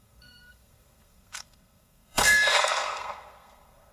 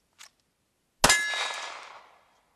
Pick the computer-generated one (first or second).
first